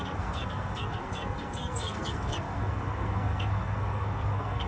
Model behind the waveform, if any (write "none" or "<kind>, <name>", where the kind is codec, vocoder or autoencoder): codec, SNAC